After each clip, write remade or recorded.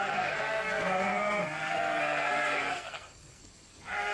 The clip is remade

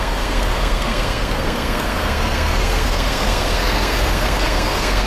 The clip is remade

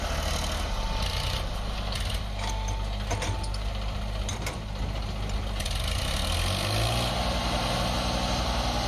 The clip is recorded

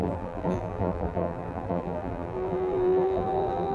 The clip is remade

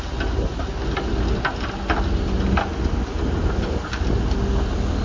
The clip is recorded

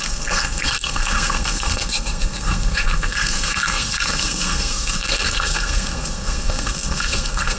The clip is remade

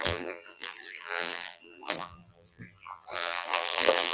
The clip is remade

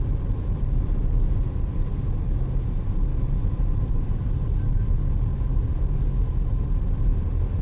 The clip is recorded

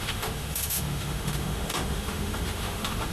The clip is remade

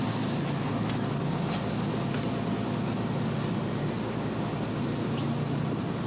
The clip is recorded